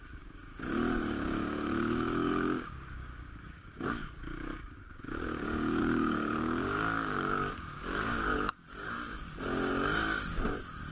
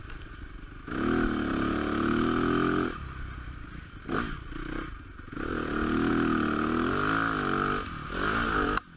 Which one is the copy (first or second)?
first